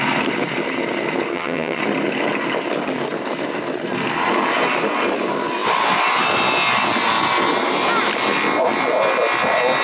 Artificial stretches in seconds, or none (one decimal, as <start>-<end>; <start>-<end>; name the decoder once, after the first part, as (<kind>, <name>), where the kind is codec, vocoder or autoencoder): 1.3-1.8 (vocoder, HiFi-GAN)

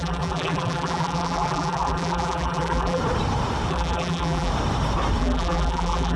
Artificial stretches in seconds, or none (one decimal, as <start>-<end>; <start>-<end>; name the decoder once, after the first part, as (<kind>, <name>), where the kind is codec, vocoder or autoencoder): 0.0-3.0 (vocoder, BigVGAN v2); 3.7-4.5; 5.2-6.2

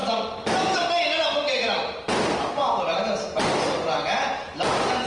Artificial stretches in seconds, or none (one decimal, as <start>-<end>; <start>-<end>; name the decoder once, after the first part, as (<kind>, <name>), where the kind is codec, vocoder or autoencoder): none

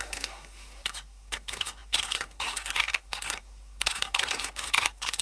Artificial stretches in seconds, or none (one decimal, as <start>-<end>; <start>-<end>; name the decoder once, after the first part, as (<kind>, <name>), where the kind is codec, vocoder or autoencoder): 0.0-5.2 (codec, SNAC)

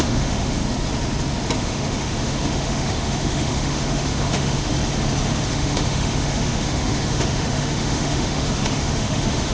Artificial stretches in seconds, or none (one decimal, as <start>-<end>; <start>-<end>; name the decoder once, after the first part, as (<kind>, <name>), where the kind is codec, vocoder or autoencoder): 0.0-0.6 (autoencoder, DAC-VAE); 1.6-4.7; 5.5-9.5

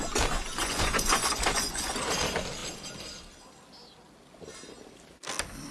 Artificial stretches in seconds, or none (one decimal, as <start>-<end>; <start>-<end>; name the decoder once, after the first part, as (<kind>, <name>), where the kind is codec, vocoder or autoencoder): 0.6-1.9 (vocoder, Vocos)

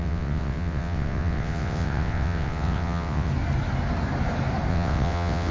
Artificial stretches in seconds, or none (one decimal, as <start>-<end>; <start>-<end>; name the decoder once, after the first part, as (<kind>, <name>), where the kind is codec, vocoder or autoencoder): 0.0-3.3 (vocoder, WaveNeXt); 4.7-5.5

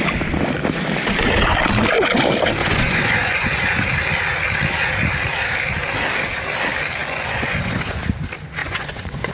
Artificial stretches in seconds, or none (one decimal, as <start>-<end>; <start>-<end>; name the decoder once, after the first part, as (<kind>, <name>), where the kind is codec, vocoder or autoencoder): 2.6-3.6 (vocoder, Vocos); 7.0-8.0; 8.6-9.3